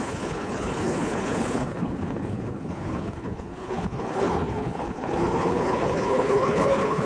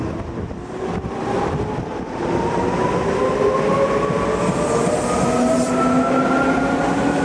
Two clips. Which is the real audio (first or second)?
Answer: second